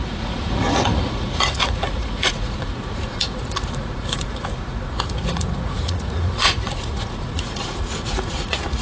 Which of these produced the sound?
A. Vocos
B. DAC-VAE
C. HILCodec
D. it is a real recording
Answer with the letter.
A